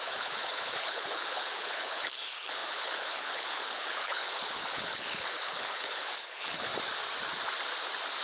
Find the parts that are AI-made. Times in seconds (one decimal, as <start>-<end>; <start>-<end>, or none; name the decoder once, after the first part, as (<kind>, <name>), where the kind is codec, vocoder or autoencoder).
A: 0.0-6.7 (codec, HILCodec)